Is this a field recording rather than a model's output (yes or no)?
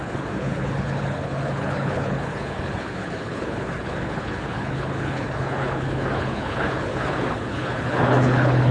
no